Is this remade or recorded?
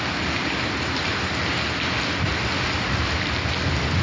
recorded